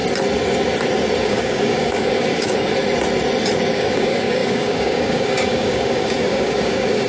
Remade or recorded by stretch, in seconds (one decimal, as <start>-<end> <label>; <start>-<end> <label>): 0.0-1.2 recorded; 1.2-2.7 remade; 2.7-3.7 recorded; 3.7-7.1 remade